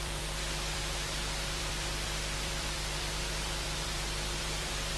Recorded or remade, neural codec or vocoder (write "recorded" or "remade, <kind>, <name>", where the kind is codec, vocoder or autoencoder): remade, vocoder, BigVGAN v2